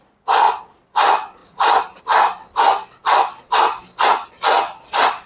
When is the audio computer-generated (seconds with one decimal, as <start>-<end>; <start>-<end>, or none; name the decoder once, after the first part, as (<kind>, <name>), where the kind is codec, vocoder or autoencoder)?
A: 0.0-0.8 (vocoder, Vocos); 1.4-2.0